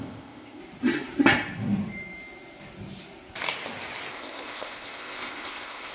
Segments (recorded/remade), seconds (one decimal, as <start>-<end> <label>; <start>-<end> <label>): 0.0-0.6 remade; 0.6-4.1 recorded; 4.1-5.9 remade